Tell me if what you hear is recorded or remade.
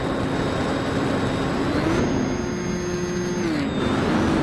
recorded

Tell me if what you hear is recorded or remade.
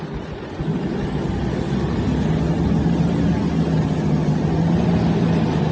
recorded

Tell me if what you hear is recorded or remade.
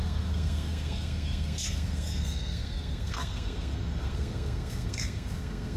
remade